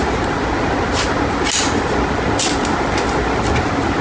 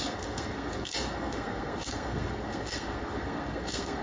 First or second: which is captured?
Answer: first